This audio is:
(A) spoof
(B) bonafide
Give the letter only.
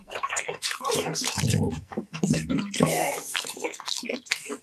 A